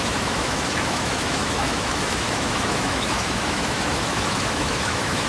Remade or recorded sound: remade